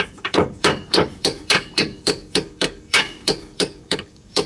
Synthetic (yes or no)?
yes